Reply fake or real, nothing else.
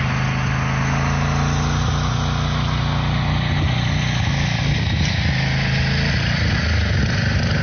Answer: real